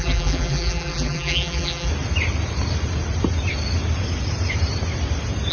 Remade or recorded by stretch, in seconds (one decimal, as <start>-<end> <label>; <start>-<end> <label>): 0.0-1.9 remade; 1.9-5.5 recorded